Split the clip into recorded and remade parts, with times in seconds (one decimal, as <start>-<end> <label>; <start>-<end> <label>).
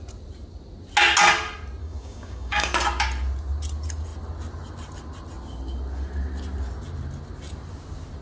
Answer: 0.0-1.8 recorded; 1.8-2.7 remade; 2.7-8.2 recorded